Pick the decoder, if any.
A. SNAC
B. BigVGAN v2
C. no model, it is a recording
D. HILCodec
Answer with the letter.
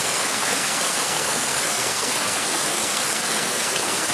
A